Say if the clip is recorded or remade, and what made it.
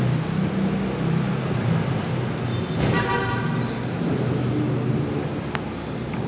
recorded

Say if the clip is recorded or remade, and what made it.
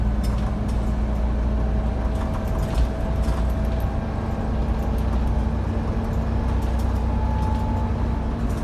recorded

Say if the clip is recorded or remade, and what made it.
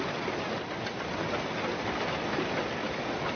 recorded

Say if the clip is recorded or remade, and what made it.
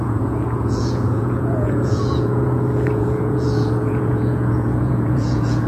remade, vocoder, Vocos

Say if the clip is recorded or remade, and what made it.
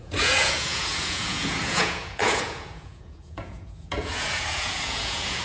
remade, vocoder, Vocos